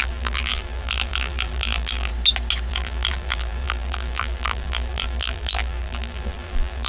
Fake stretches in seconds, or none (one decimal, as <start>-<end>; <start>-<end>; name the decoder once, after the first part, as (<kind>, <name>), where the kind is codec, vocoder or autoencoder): 0.0-2.1 (vocoder, BigVGAN v2); 2.7-6.9